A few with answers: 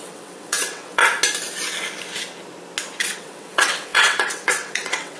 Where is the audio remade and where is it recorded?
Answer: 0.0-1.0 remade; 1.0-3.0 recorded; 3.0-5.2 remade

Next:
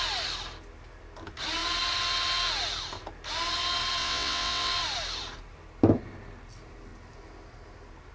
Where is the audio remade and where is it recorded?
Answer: 0.0-4.0 recorded; 4.0-4.7 remade; 4.7-8.1 recorded

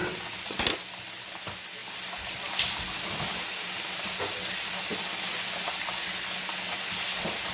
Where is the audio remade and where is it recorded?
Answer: 0.0-0.6 remade; 0.6-7.5 recorded